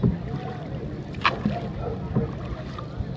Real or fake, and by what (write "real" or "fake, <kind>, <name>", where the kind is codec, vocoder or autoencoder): real